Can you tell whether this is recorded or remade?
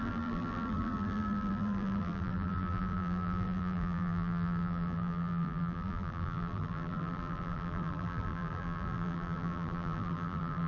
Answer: remade